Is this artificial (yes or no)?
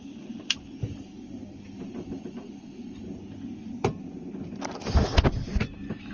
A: yes